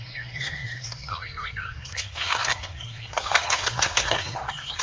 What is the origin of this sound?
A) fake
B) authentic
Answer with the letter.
A